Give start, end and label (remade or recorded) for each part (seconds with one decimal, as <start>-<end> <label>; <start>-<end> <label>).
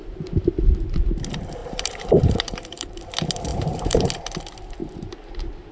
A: 0.0-1.6 recorded; 1.6-3.0 remade; 3.0-3.5 recorded; 3.5-4.1 remade; 4.1-5.7 recorded